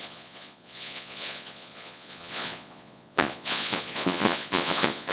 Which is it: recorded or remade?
remade